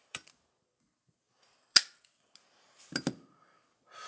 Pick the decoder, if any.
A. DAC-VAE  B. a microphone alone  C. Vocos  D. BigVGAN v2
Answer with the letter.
B